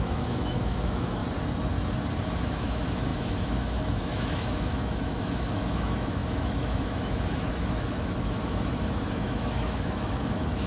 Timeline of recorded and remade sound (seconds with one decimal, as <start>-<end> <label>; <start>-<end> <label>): 0.0-1.2 remade; 1.2-2.3 recorded; 2.3-10.7 remade